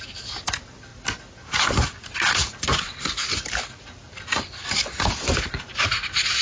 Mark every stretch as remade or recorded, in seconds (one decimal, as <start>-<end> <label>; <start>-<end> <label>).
0.0-6.4 recorded